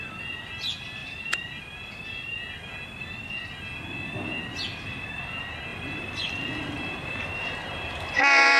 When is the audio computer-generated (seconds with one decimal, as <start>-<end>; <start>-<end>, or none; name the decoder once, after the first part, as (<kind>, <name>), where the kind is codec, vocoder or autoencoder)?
1.0-1.6 (vocoder, BigVGAN v2); 5.7-8.6